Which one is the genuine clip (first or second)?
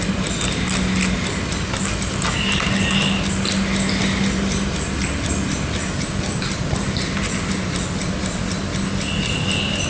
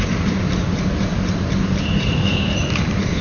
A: first